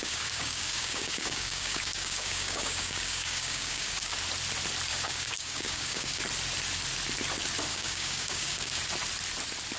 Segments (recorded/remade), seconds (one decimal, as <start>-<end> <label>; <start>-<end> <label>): 0.0-4.2 remade; 4.2-4.9 recorded; 4.9-6.2 remade; 6.2-7.7 recorded; 7.7-8.8 remade; 8.8-9.8 recorded